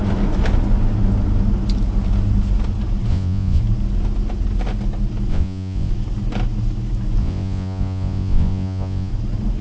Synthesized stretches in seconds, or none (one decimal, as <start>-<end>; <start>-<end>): 3.1-3.6; 5.3-5.9; 7.2-9.1